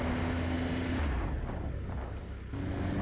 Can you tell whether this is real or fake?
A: real